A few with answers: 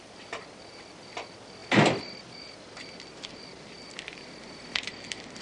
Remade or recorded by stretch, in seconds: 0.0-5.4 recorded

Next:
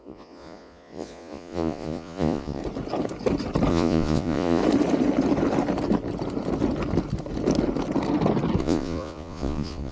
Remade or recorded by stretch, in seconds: 0.0-2.6 remade; 2.6-3.7 recorded; 3.7-4.6 remade; 4.6-8.6 recorded; 8.6-9.9 remade